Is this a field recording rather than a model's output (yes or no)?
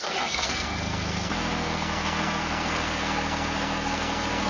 no